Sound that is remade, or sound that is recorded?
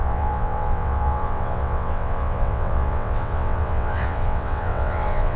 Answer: remade